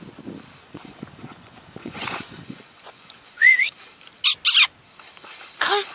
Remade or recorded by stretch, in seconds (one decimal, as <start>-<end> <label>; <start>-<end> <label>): 0.0-0.6 recorded; 0.6-3.7 remade; 3.7-5.9 recorded